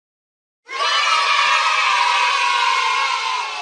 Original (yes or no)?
yes